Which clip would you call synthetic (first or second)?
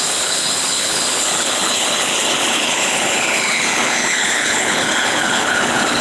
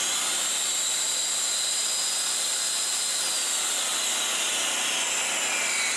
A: first